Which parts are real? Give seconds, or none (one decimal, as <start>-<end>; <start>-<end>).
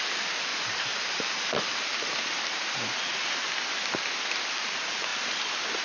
0.0-0.5; 3.5-5.8